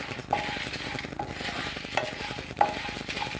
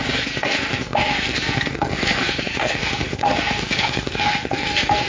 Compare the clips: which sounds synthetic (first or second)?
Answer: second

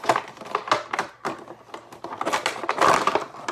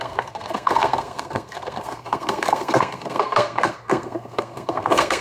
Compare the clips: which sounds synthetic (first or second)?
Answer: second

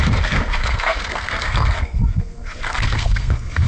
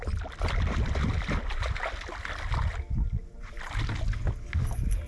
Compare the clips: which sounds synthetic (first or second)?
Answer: first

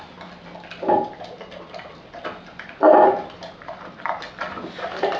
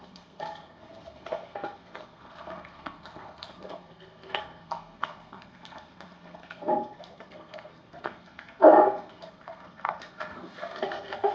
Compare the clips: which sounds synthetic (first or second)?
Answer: second